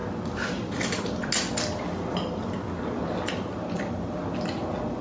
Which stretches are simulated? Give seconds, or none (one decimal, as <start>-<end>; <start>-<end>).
none